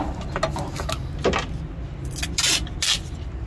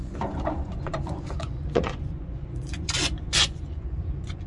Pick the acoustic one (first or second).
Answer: first